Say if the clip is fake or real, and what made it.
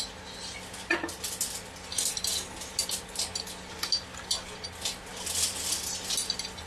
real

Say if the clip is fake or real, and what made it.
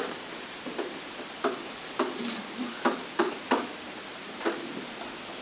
fake, vocoder, BigVGAN v2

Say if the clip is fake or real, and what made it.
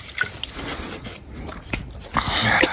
real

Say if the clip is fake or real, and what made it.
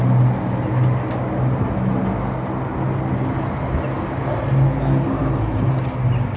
real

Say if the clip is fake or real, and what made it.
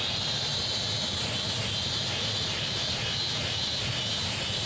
real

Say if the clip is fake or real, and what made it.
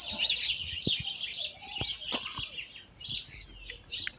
real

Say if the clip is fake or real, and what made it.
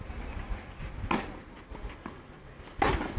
real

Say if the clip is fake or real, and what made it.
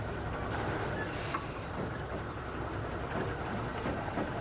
fake, vocoder, BigVGAN v2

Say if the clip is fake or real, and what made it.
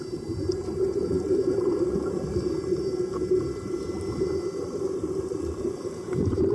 fake, vocoder, BigVGAN v2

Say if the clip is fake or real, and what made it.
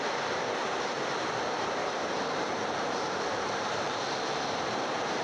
fake, vocoder, BigVGAN v2